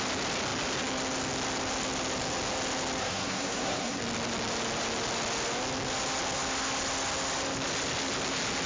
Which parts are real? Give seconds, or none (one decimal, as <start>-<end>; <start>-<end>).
0.0-3.0; 4.0-8.7